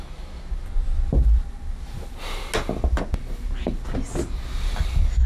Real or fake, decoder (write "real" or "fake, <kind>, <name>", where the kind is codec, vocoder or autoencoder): real